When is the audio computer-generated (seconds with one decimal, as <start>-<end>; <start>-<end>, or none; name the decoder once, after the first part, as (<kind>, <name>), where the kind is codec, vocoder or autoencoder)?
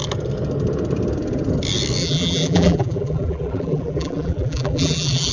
2.0-5.3 (vocoder, BigVGAN v2)